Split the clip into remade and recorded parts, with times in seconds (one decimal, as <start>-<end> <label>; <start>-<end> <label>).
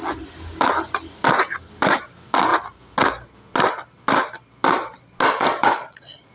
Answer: 0.0-5.5 recorded; 5.5-6.3 remade